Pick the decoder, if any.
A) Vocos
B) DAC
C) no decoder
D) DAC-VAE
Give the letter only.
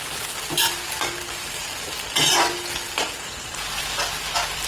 C